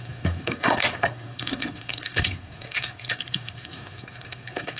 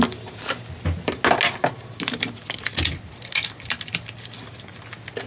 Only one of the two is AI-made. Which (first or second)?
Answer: first